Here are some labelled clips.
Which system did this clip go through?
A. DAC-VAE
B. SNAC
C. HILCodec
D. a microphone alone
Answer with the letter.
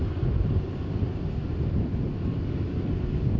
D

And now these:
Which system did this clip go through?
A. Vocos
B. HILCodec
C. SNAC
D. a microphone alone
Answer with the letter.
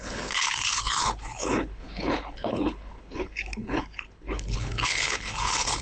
B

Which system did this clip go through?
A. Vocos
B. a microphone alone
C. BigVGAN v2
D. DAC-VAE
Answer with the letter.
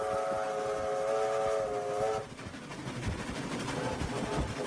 B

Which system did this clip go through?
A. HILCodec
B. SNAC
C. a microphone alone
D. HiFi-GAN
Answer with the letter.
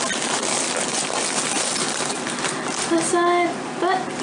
C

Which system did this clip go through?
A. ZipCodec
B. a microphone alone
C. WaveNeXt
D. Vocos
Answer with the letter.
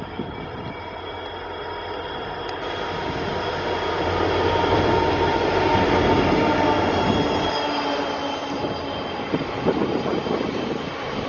B